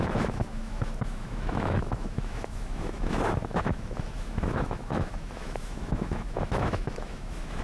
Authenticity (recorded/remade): remade